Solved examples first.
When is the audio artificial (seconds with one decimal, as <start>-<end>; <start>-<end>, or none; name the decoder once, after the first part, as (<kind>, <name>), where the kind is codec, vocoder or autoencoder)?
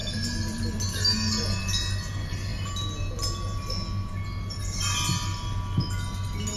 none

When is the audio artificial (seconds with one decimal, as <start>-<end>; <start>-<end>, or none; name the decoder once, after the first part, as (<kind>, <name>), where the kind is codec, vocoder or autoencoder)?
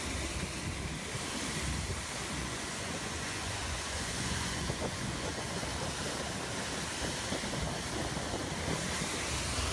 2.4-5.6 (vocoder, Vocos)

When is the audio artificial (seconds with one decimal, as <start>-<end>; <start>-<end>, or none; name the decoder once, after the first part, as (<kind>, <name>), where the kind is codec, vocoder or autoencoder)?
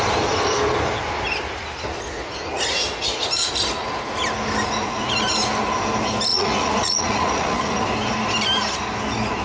6.3-7.8 (vocoder, Vocos)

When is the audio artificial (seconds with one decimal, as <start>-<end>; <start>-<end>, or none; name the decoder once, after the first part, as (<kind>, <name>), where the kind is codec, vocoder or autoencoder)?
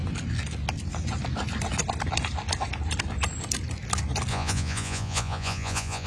4.3-6.1 (vocoder, Vocos)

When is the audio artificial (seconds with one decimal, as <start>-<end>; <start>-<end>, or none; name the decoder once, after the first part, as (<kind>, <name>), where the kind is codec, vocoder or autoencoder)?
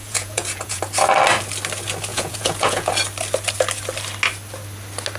0.0-0.8 (vocoder, Vocos); 2.1-2.9